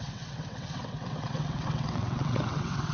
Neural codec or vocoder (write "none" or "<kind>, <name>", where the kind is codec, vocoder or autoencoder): vocoder, WaveNeXt